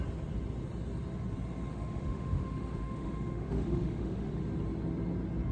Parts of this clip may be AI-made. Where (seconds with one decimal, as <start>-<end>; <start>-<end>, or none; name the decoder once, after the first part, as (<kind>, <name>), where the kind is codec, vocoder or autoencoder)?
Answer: 1.7-4.4 (autoencoder, DAC-VAE)